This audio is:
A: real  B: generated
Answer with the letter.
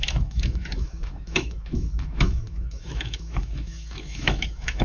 B